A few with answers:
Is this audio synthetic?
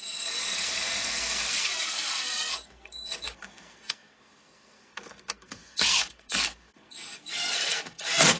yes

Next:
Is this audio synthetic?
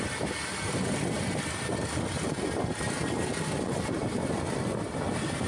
no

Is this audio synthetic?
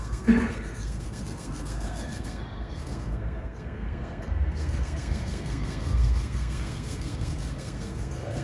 yes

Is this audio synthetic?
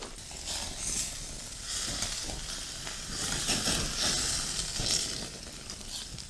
no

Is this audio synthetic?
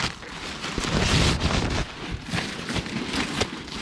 no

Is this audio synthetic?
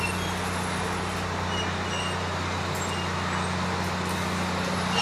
no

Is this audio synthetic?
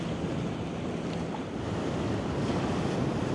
no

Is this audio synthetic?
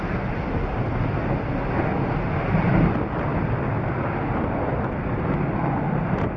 no